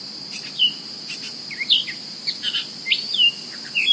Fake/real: real